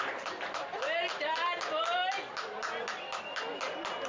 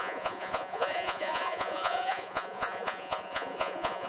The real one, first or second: first